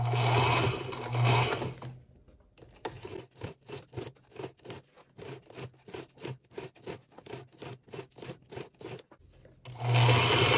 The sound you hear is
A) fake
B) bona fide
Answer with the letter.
B